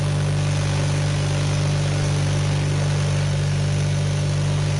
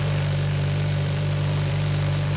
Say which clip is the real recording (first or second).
first